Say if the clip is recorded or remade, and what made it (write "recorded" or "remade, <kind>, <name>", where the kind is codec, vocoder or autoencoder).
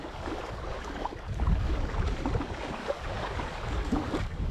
remade, codec, DAC